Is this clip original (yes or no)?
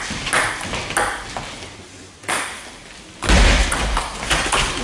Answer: yes